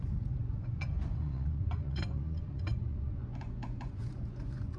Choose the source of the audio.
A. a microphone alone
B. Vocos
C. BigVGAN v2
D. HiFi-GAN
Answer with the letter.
B